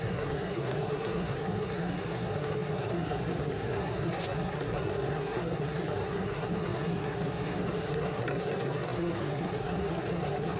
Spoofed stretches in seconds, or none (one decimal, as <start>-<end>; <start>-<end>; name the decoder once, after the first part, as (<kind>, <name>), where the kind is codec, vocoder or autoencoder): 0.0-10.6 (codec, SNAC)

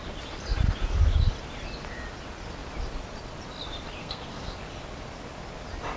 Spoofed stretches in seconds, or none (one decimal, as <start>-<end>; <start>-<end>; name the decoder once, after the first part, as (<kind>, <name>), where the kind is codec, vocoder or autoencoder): 4.0-4.5 (codec, SNAC)

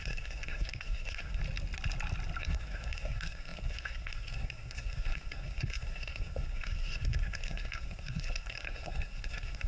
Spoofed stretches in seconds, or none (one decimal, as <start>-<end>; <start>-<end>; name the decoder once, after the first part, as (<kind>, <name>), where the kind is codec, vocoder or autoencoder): 0.0-1.4 (codec, SNAC); 2.4-9.7

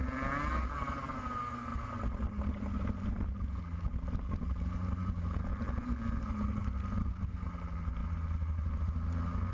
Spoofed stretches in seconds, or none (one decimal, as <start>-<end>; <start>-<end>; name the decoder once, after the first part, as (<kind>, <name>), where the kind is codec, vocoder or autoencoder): 7.0-7.5 (codec, SNAC)

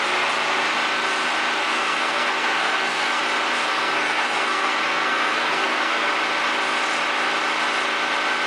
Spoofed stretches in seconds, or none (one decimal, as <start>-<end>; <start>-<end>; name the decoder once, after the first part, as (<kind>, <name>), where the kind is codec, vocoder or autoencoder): 1.6-3.2 (codec, SNAC); 3.6-6.1

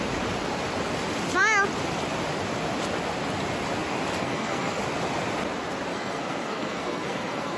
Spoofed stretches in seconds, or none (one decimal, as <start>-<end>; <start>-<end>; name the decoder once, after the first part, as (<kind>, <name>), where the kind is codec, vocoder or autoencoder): 4.2-4.8 (codec, SNAC); 5.9-7.6